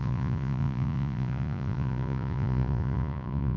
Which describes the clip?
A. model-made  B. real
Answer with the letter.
A